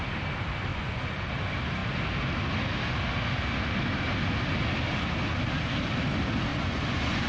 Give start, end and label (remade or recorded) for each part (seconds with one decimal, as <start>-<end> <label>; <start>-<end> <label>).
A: 0.0-0.7 recorded; 0.7-1.3 remade; 1.3-6.5 recorded; 6.5-7.3 remade